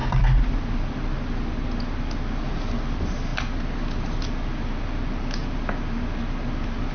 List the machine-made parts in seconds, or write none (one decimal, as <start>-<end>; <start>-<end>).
none

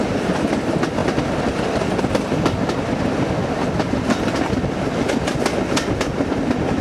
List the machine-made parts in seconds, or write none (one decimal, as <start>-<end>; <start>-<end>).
none

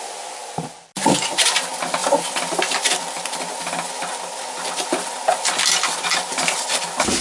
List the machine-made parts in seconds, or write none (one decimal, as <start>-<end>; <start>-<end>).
none

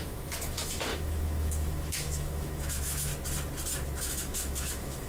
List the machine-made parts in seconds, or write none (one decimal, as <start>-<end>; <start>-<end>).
0.0-3.1; 4.0-5.1

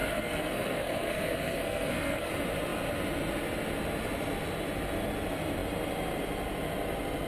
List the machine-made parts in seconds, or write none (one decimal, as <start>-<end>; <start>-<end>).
0.0-2.3

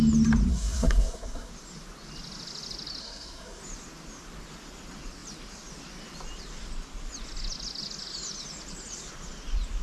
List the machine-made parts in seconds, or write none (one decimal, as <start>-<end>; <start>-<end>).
0.5-1.5; 3.0-3.6

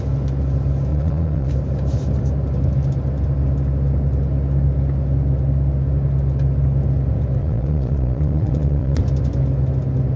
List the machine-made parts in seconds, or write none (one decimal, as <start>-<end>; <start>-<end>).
0.9-1.5; 7.4-9.0

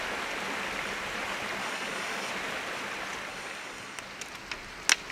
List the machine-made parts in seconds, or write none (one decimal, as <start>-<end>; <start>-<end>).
1.6-2.3; 3.3-4.0